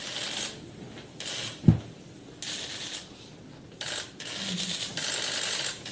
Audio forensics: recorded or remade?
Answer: recorded